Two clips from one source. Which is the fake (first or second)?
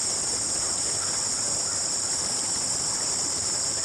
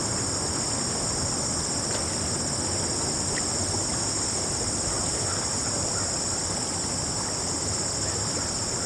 first